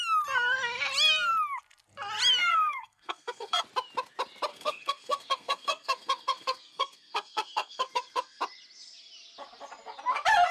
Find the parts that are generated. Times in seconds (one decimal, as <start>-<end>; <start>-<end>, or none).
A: 2.5-3.6; 4.5-8.4